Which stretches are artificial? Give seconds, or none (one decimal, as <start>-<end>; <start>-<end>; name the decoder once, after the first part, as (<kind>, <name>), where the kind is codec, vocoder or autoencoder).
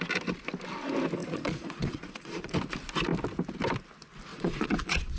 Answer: 1.2-2.5 (vocoder, Vocos); 4.3-5.2